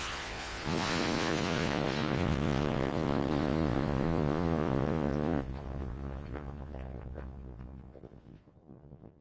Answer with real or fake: fake